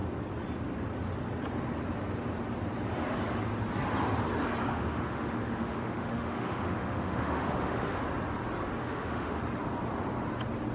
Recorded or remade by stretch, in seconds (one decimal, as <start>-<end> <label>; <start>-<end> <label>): 0.0-4.7 recorded; 4.7-8.0 remade; 8.0-8.8 recorded; 8.8-9.4 remade; 9.4-10.7 recorded